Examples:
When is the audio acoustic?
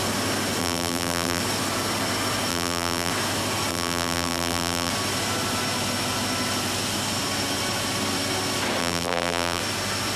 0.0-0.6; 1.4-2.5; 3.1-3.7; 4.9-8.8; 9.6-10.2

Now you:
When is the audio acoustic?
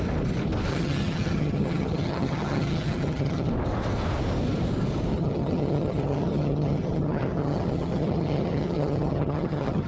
0.0-0.7; 3.5-5.1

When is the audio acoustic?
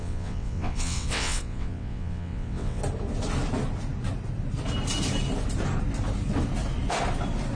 2.8-7.6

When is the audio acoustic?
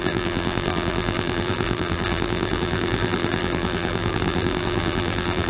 none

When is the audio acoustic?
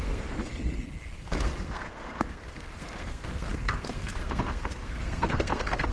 0.5-1.2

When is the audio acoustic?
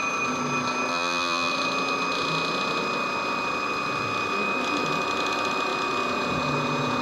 0.0-0.9; 1.5-7.0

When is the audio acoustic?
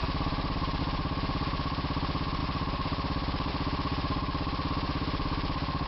0.8-2.4; 3.5-3.9; 4.7-5.9